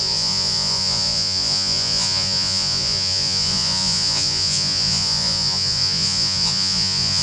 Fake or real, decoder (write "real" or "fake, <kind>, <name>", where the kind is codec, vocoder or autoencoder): fake, vocoder, Vocos